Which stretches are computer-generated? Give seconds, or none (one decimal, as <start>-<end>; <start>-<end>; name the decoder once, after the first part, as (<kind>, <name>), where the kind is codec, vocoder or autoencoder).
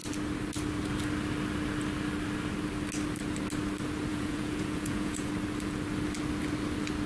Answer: 4.1-5.3 (vocoder, Vocos)